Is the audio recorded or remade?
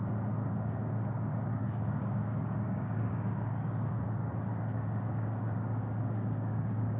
remade